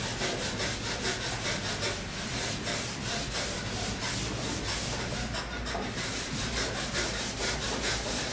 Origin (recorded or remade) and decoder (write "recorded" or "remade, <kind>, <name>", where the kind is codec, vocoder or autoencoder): recorded